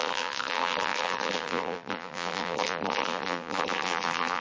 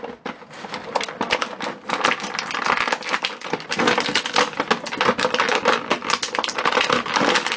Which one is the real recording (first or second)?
second